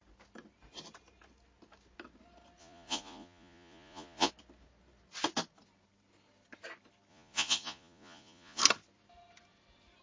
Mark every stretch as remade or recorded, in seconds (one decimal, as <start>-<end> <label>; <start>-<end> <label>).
0.0-2.6 recorded; 2.6-4.3 remade; 4.3-7.1 recorded; 7.1-8.6 remade; 8.6-10.0 recorded